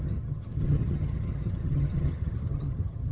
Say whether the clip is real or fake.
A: fake